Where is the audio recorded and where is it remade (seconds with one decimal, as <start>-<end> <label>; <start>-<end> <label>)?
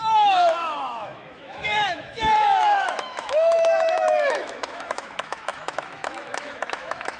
0.0-7.2 remade